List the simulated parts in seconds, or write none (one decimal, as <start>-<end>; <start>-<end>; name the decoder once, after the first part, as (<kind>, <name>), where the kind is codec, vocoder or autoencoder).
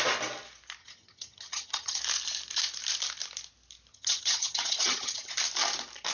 0.8-2.0 (vocoder, HiFi-GAN); 3.9-5.3